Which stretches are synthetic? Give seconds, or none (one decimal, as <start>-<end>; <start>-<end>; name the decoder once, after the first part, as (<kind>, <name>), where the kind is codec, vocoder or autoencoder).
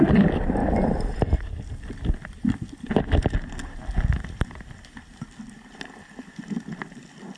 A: none